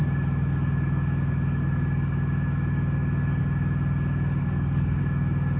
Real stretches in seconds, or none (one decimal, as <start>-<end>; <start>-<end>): 0.0-4.4; 5.0-5.6